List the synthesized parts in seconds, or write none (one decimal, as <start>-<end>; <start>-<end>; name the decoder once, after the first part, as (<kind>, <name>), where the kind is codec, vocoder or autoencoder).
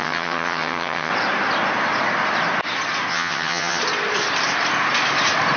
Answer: 0.0-1.1 (vocoder, HiFi-GAN); 3.1-3.8